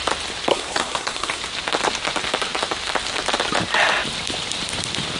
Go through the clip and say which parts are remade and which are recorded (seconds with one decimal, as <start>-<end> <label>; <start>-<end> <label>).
0.0-0.5 recorded; 0.5-1.4 remade; 1.4-5.2 recorded